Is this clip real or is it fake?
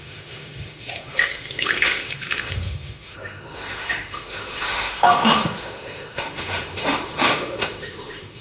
fake